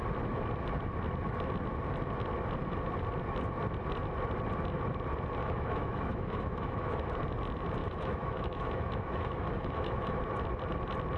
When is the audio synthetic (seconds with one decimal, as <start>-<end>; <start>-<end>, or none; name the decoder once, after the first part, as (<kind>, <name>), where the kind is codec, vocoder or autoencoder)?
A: 5.4-7.1 (autoencoder, DAC-VAE); 7.8-10.2